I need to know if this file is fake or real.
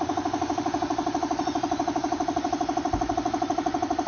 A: real